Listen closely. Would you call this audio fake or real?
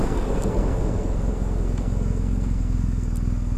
fake